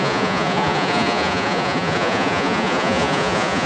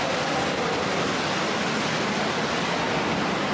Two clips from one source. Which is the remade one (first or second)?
first